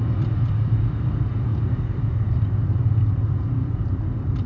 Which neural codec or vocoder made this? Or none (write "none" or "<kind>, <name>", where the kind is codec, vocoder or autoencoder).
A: vocoder, BigVGAN v2